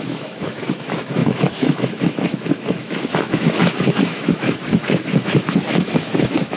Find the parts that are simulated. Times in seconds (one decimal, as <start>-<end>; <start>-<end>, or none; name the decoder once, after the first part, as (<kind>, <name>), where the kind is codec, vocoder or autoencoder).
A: 0.0-6.6 (autoencoder, DAC-VAE)